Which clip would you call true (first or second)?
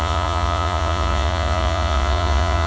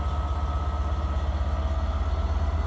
second